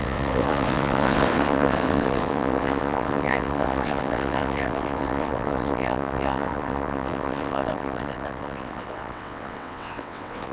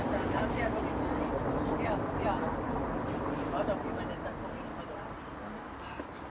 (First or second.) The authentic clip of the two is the second